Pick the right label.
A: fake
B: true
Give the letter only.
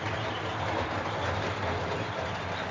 B